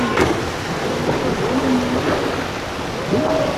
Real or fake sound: real